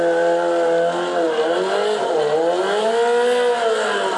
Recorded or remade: recorded